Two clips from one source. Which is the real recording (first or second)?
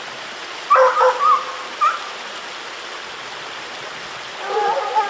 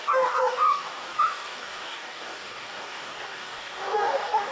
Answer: first